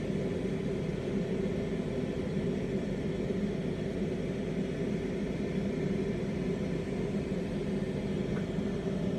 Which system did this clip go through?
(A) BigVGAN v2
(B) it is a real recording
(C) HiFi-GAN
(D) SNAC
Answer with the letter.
B